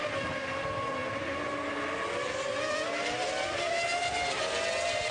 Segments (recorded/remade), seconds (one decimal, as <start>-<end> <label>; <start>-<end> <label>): 0.0-5.1 recorded